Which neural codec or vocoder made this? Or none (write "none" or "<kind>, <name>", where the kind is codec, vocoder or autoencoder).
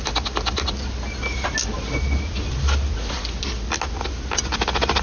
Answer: none